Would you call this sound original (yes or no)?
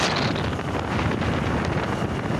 yes